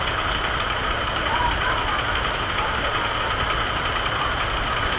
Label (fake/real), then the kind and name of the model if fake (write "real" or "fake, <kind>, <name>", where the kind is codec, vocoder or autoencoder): real